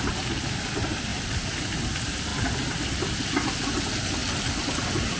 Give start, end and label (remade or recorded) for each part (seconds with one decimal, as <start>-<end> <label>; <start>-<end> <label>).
0.0-1.1 recorded; 1.1-1.8 remade; 1.8-5.2 recorded